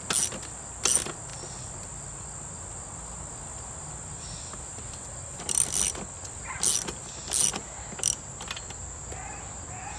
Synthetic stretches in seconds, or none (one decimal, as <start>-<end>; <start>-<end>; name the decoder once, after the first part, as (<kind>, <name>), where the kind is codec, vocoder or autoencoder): none